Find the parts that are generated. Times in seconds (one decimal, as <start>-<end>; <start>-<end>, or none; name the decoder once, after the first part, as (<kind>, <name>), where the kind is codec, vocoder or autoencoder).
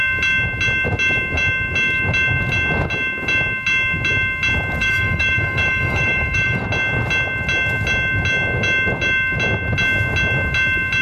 4.8-6.6 (autoencoder, DAC-VAE)